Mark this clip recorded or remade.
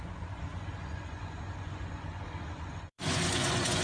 remade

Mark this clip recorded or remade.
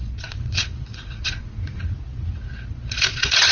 remade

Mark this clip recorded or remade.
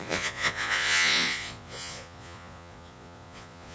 remade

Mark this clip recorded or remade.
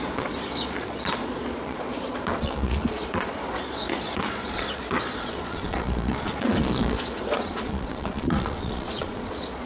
remade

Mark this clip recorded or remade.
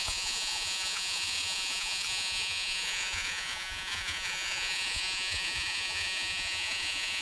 remade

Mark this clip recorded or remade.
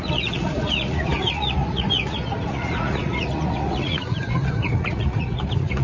remade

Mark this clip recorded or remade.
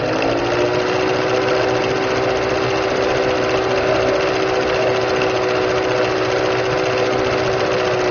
recorded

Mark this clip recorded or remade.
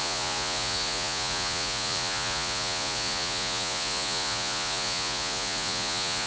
remade